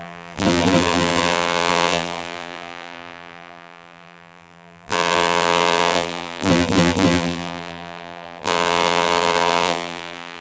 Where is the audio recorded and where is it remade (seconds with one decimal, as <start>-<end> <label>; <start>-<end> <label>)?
0.0-10.4 remade